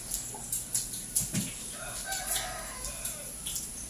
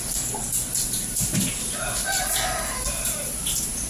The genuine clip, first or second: first